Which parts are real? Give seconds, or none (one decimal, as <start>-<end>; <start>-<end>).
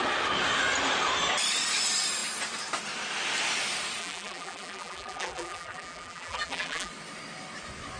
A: 0.0-4.0; 6.9-8.0